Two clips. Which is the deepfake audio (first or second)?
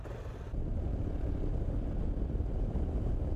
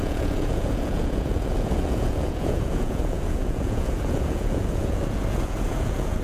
second